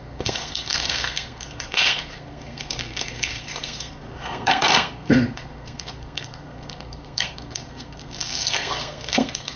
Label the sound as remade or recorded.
remade